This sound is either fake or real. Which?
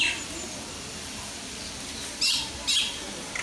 real